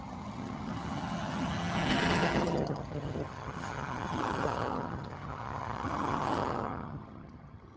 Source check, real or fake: fake